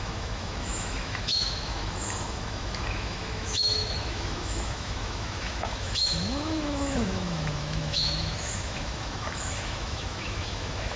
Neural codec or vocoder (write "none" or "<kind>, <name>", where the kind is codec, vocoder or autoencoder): autoencoder, DAC-VAE